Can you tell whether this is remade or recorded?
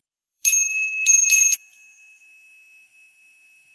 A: remade